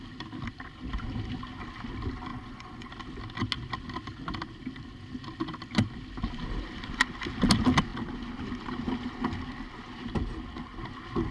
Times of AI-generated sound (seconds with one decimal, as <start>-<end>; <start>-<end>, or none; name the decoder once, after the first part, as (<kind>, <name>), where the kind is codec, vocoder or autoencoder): 2.3-2.9 (vocoder, Vocos)